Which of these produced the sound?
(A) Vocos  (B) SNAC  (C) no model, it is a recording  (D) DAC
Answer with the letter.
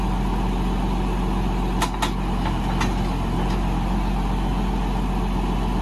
C